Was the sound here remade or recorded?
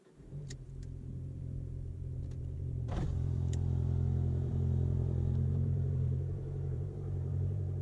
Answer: remade